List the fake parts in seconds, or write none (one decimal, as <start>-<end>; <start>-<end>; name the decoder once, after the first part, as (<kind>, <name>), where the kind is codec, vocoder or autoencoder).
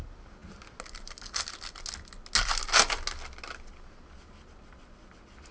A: none